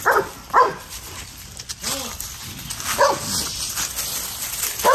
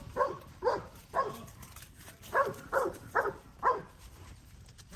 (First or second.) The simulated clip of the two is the second